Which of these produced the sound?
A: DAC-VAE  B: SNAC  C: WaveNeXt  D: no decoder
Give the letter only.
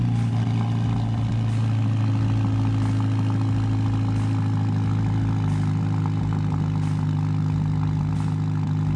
D